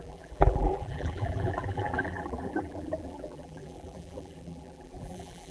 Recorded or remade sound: remade